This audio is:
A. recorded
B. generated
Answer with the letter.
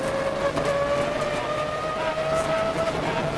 A